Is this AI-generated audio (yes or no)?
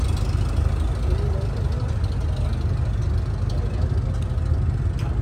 no